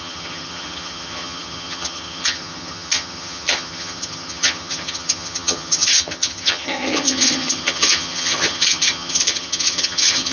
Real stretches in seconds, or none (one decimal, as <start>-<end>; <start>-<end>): none